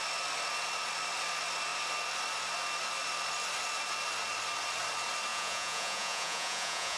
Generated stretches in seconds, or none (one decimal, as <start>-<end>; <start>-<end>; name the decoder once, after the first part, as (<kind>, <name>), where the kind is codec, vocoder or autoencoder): 5.3-7.0 (vocoder, Vocos)